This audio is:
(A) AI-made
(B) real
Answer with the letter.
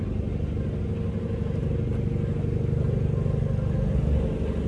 B